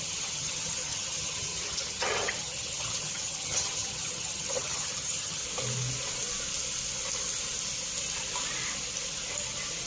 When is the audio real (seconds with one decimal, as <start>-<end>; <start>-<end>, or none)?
5.4-9.9